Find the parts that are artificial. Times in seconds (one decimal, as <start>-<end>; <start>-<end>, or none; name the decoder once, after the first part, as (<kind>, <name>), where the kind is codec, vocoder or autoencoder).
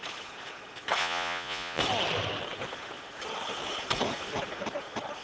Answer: 1.0-1.8 (vocoder, Vocos)